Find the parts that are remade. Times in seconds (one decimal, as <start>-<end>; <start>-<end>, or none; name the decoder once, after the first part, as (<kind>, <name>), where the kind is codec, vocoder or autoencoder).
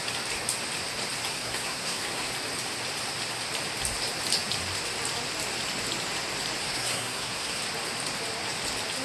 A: 1.3-2.3 (codec, SNAC); 6.6-7.6